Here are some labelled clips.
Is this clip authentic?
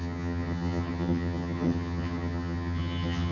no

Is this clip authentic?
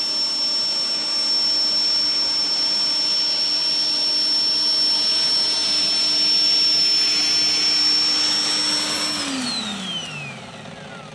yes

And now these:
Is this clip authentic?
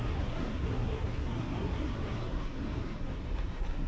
no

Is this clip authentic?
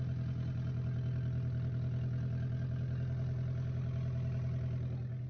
yes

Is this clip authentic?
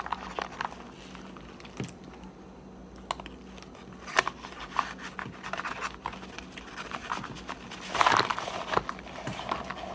yes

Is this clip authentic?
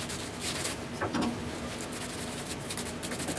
yes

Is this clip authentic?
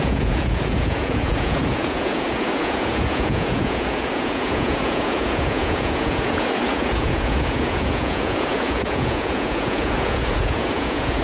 no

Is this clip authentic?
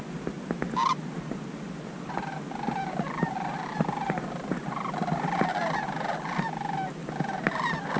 yes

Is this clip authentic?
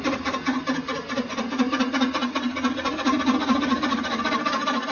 yes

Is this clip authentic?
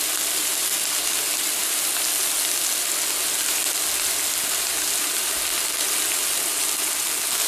yes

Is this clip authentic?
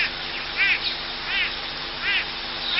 yes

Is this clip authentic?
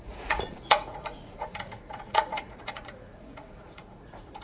no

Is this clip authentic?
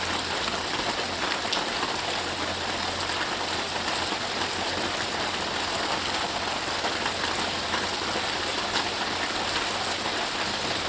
yes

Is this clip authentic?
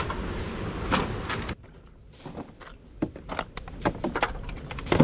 yes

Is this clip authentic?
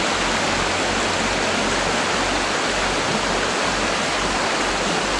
yes